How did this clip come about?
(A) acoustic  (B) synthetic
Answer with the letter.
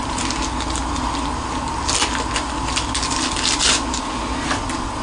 A